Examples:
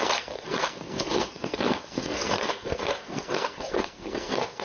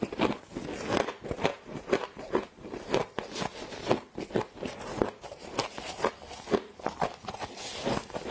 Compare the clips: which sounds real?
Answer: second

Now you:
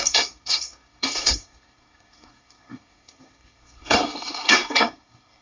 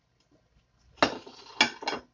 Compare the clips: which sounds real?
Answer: second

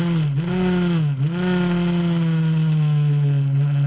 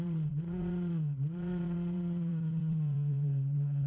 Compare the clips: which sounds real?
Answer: first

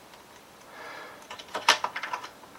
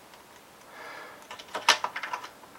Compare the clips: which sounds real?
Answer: second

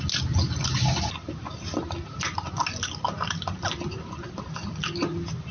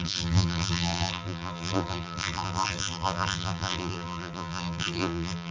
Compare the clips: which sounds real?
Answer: first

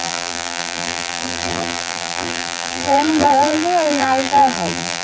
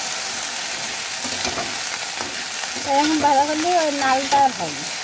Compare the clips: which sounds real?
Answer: second